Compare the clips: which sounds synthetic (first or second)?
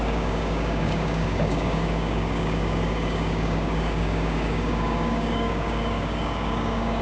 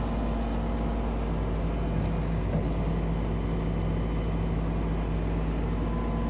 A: first